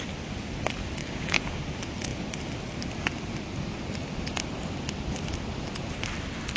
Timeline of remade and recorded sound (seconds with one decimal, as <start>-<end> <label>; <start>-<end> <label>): 0.0-1.0 recorded; 1.0-1.6 remade; 1.6-6.6 recorded